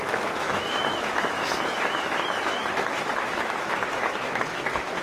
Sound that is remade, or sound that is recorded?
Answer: remade